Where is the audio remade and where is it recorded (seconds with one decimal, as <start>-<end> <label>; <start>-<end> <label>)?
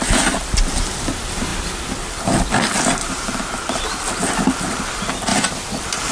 0.0-6.1 recorded